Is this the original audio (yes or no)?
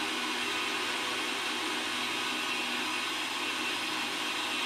yes